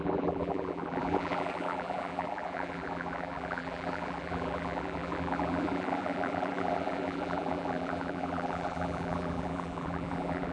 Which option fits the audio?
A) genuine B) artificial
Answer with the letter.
B